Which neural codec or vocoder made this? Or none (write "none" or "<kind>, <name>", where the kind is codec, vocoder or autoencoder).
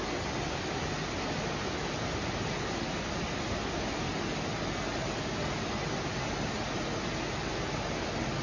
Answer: none